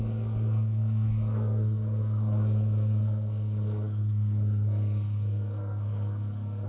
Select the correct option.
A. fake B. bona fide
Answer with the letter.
A